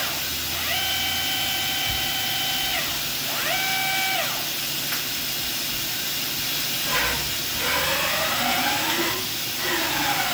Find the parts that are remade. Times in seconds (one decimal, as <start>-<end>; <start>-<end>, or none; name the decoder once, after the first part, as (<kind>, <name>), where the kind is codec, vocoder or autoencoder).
none